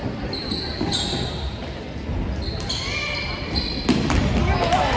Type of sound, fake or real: real